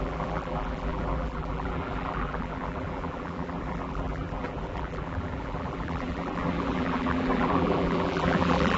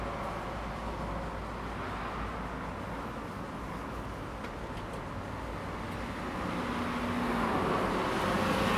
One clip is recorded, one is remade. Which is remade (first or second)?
first